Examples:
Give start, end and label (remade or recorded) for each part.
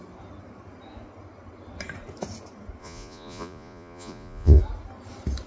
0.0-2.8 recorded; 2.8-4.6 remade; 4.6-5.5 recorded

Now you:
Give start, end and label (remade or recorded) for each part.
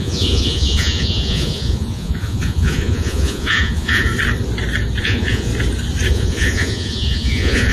0.0-4.1 remade; 4.1-5.0 recorded; 5.0-5.5 remade; 5.5-6.1 recorded; 6.1-7.7 remade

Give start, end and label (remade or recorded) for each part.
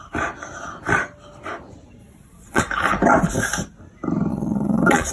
0.0-2.0 recorded; 2.0-2.6 remade; 2.6-4.3 recorded; 4.3-5.1 remade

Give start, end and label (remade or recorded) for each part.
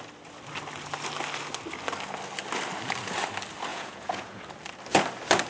0.0-3.7 recorded; 3.7-4.4 remade; 4.4-5.5 recorded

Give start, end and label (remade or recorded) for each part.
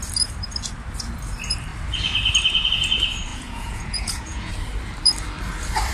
0.0-3.3 recorded; 3.3-4.5 remade; 4.5-5.9 recorded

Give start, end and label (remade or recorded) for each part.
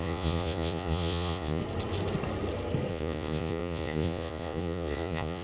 0.0-1.6 remade; 1.6-2.9 recorded; 2.9-5.4 remade